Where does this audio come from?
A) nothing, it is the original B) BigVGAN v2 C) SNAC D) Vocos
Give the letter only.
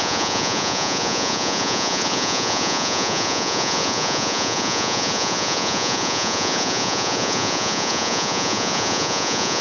D